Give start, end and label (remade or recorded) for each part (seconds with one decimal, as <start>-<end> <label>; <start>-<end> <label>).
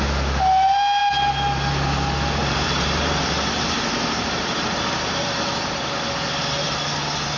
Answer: 0.0-2.4 recorded; 2.4-5.8 remade; 5.8-7.4 recorded